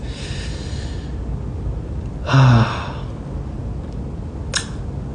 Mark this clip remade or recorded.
recorded